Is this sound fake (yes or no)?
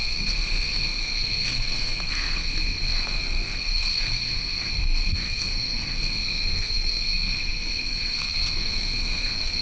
yes